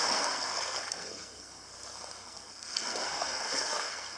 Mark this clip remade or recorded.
remade